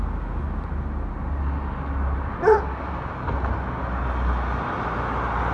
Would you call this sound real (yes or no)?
yes